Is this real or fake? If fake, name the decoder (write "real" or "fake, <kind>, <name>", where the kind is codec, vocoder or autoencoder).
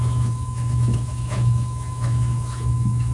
fake, autoencoder, DAC-VAE